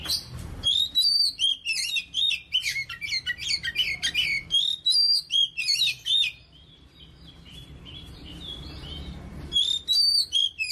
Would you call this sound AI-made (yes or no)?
yes